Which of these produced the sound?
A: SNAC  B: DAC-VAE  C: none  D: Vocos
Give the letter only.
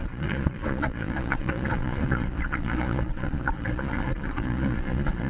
D